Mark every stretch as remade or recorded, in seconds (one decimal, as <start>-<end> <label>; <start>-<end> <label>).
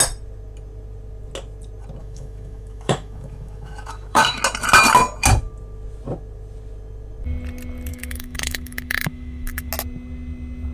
0.0-2.0 recorded; 2.0-4.4 remade; 4.4-7.9 recorded; 7.9-9.7 remade; 9.7-10.7 recorded